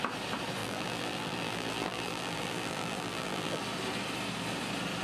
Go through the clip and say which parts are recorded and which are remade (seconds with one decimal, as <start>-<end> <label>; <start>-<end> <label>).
0.0-0.6 recorded; 0.6-3.6 remade; 3.6-5.0 recorded